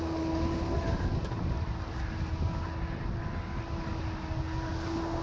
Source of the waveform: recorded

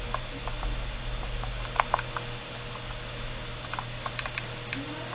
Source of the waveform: recorded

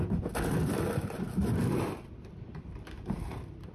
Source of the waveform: remade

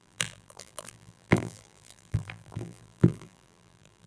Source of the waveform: remade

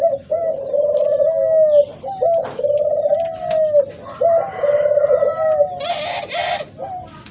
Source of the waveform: recorded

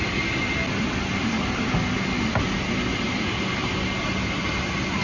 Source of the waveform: recorded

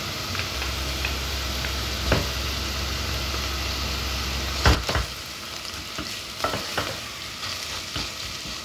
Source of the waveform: remade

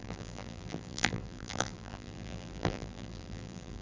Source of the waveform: remade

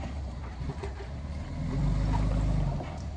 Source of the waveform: remade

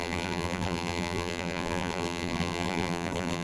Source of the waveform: remade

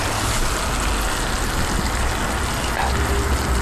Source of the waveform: recorded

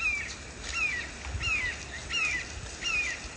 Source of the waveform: recorded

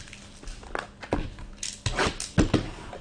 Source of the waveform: recorded